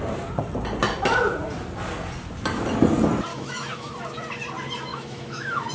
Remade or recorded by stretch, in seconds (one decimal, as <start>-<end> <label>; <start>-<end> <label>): 0.0-3.3 recorded; 3.3-3.9 remade; 3.9-4.9 recorded; 4.9-5.7 remade